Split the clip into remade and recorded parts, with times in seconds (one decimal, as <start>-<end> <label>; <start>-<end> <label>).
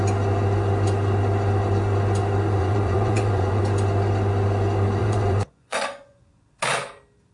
0.0-2.6 recorded; 2.6-3.6 remade; 3.6-5.0 recorded; 5.0-6.3 remade; 6.3-7.3 recorded